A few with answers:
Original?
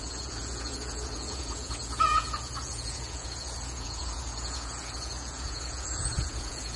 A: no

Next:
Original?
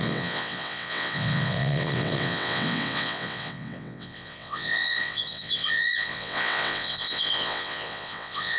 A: no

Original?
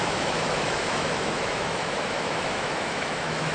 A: no